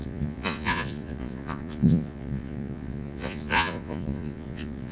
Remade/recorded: remade